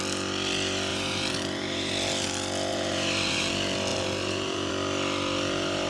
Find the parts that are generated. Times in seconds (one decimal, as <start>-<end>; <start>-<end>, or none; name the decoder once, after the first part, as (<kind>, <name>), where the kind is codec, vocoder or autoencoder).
0.9-1.9 (vocoder, BigVGAN v2); 2.7-3.5; 3.9-4.7